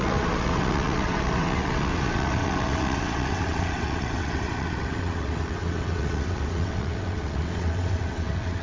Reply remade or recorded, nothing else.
remade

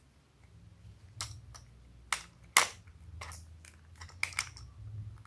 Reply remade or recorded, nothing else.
recorded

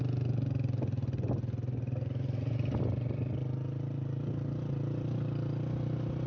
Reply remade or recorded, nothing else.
recorded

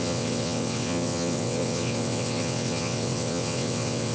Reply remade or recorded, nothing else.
remade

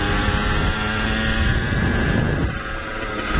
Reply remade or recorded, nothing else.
recorded